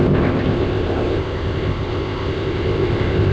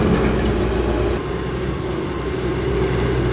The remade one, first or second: first